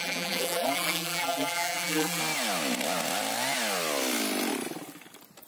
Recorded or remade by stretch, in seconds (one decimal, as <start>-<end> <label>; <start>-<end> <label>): 0.0-2.2 remade; 2.2-5.5 recorded

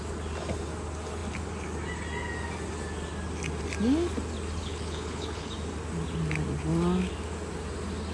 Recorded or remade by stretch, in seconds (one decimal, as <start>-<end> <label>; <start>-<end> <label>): 0.0-4.6 recorded; 4.6-5.5 remade; 5.5-8.1 recorded

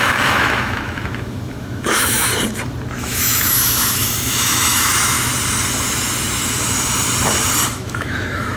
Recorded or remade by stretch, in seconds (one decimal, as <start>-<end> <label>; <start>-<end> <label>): 0.0-2.3 remade; 2.3-3.0 recorded; 3.0-5.3 remade; 5.3-7.7 recorded; 7.7-8.6 remade

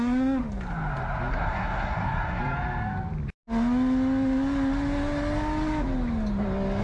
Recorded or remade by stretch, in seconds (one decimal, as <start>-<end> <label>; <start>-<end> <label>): 0.0-0.4 remade; 0.4-1.3 recorded; 1.3-2.4 remade; 2.4-6.8 recorded

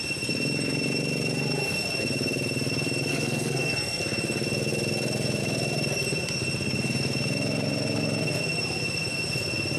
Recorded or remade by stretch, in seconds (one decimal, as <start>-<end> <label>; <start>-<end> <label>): 0.0-3.1 recorded; 3.1-4.0 remade; 4.0-9.8 recorded